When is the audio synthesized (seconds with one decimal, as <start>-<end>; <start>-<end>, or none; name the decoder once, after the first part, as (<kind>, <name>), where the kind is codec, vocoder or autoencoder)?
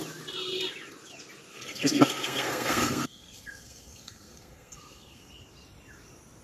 1.5-5.3 (codec, SNAC)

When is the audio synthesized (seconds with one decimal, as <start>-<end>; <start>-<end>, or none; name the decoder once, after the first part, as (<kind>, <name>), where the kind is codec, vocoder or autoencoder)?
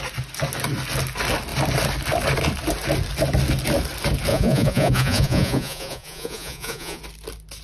4.3-7.0 (vocoder, Vocos)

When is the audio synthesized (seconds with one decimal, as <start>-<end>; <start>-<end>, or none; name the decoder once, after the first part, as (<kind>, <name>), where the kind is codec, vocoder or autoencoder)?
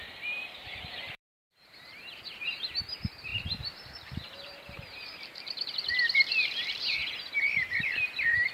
0.0-7.0 (vocoder, BigVGAN v2); 7.6-8.5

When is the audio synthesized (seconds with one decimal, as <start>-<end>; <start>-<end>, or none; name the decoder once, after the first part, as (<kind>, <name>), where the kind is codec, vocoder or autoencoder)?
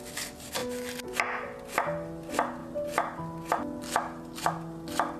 none